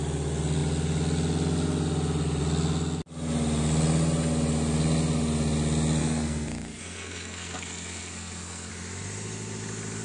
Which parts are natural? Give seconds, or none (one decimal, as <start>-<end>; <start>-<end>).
0.0-6.0; 8.7-10.0